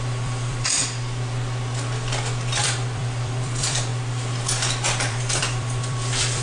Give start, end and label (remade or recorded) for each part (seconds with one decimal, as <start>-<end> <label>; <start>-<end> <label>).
0.0-0.8 remade; 0.8-2.6 recorded; 2.6-3.9 remade; 3.9-5.1 recorded; 5.1-6.4 remade